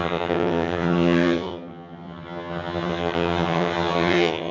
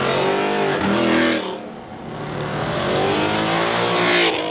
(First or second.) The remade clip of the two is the first